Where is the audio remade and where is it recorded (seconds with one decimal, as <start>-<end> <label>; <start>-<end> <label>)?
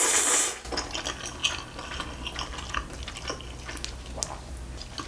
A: 0.0-5.1 recorded